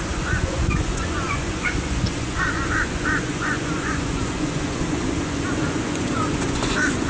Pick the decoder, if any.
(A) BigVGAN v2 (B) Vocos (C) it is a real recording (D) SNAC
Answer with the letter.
B